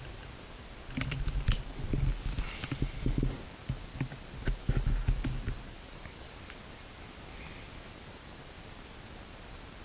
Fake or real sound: real